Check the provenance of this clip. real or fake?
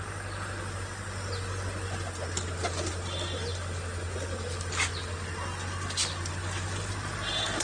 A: real